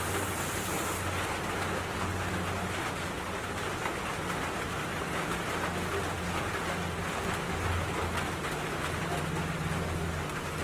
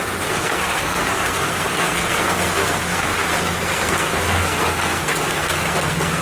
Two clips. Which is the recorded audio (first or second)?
first